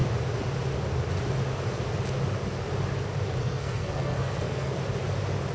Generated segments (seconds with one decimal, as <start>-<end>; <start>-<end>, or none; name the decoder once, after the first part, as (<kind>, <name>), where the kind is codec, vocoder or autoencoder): 3.4-4.8 (codec, SNAC)